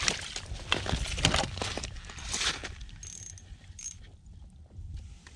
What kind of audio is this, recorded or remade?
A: recorded